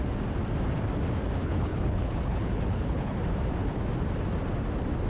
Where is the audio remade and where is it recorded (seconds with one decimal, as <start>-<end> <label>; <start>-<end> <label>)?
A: 0.0-1.4 recorded; 1.4-3.2 remade; 3.2-5.1 recorded